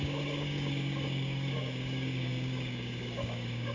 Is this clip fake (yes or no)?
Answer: yes